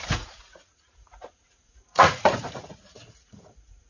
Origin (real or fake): fake